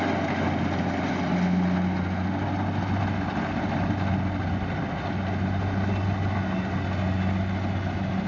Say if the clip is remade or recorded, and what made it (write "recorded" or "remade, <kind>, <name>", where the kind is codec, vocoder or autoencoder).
recorded